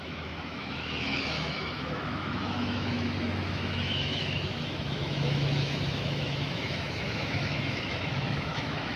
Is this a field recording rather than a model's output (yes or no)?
no